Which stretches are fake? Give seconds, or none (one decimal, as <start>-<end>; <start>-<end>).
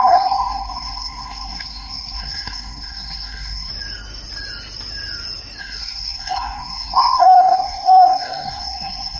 0.0-3.7; 5.6-9.2